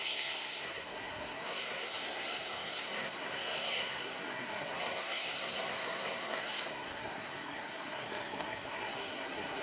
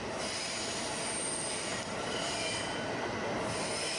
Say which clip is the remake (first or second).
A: first